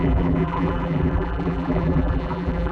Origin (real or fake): fake